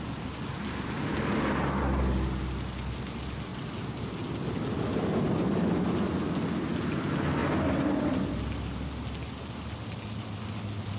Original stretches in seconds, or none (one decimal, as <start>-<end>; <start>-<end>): 0.0-11.0